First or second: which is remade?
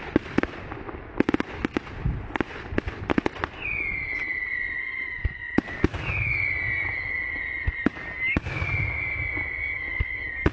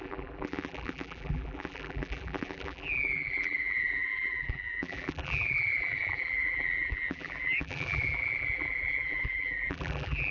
second